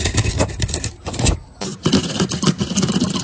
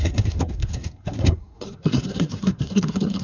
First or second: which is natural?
first